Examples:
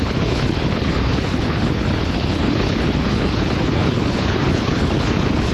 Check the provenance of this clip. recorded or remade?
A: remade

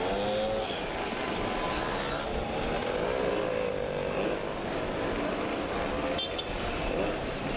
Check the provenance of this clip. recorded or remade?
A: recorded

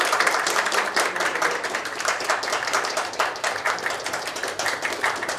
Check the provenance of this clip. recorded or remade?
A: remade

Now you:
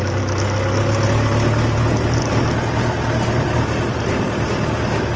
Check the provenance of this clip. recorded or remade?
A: recorded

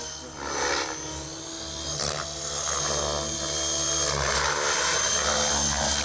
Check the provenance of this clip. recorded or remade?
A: recorded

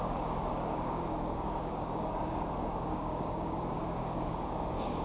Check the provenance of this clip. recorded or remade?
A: remade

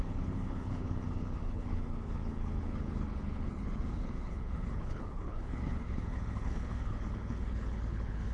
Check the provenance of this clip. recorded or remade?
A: remade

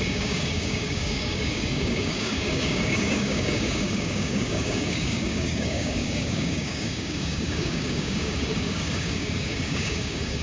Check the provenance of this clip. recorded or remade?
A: remade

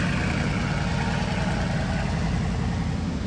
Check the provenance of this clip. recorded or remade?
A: recorded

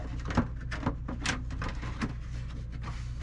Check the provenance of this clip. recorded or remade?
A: recorded